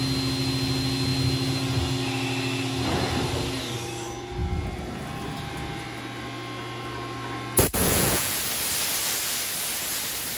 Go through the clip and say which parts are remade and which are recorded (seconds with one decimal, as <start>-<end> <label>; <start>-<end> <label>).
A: 0.0-7.8 recorded; 7.8-8.4 remade; 8.4-10.4 recorded